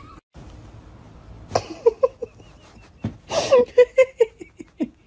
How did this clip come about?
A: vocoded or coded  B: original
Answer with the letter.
B